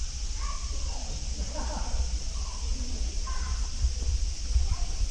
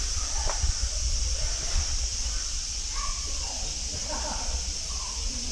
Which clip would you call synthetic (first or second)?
second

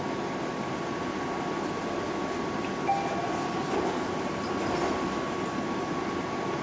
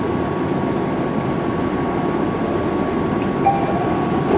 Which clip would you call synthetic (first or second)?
second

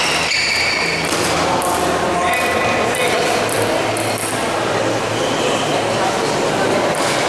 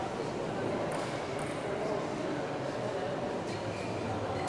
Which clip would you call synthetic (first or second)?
second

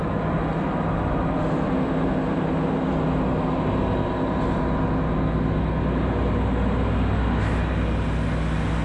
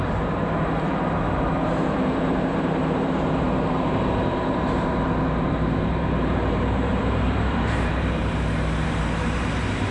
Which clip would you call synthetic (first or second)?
second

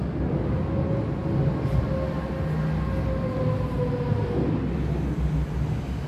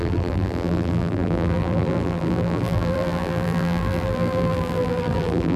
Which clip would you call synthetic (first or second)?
second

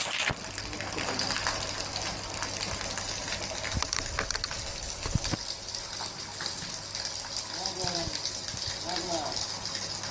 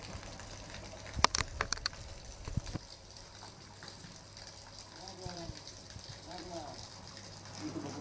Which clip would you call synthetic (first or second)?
second